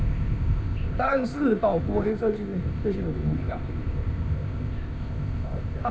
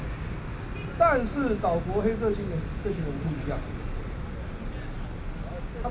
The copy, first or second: first